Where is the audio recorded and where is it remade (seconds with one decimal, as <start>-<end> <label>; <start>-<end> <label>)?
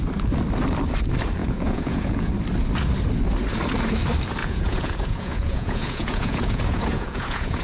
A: 0.0-1.4 recorded; 1.4-2.3 remade; 2.3-4.4 recorded; 4.4-7.6 remade